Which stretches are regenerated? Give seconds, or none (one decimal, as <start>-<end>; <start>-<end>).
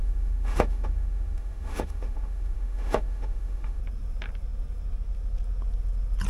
0.0-3.8